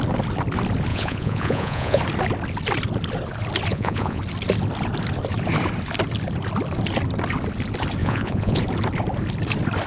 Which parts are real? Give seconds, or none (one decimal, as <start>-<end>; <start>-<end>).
0.0-0.9; 2.0-3.7; 4.2-8.0; 8.6-9.9